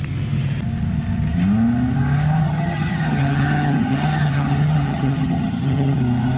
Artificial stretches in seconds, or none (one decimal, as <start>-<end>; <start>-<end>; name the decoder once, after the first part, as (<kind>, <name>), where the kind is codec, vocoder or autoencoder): 2.4-6.0 (vocoder, HiFi-GAN)